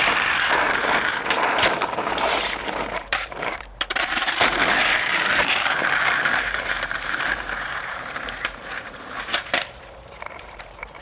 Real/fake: fake